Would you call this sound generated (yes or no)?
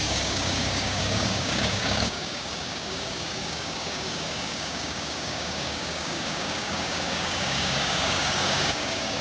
yes